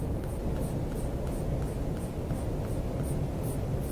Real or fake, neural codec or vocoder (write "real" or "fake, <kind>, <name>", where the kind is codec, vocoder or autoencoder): real